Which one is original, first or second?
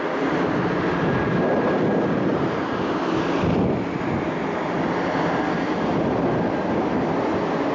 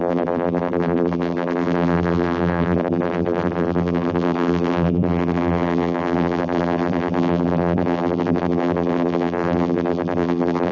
first